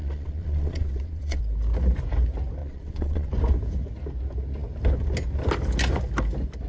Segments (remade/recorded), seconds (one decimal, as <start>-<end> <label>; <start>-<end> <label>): 0.0-1.4 remade; 1.4-2.6 recorded; 2.6-3.3 remade; 3.3-6.7 recorded